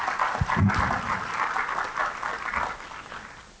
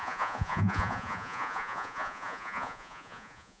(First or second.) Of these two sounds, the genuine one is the first